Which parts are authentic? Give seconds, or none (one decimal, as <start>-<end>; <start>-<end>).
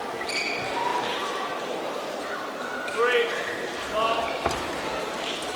0.0-0.9; 2.6-5.6